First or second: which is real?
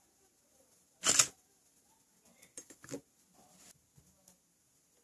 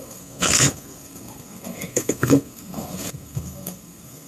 first